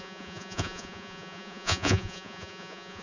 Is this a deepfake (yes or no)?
yes